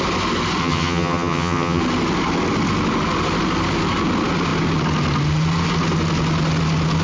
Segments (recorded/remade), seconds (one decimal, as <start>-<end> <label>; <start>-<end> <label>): 0.0-0.6 recorded; 0.6-1.8 remade; 1.8-7.0 recorded